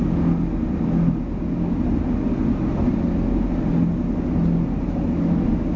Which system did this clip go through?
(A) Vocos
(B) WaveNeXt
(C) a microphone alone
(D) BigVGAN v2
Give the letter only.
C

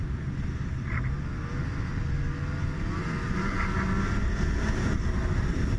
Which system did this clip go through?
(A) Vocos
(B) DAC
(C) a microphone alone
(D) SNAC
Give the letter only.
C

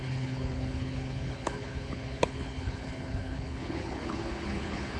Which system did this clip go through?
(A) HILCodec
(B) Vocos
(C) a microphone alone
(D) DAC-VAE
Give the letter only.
A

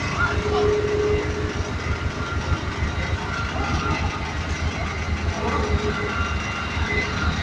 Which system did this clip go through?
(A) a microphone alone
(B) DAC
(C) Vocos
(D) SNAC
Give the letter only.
A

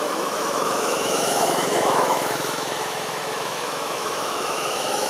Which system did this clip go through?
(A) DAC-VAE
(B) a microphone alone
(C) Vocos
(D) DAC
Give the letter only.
A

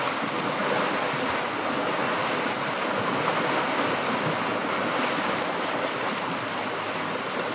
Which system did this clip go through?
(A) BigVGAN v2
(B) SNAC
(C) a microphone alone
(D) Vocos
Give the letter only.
C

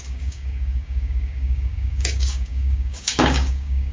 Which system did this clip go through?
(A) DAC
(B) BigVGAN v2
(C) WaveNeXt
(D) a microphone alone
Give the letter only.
A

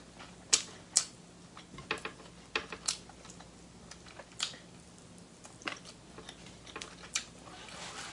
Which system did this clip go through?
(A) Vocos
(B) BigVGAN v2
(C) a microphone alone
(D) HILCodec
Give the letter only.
C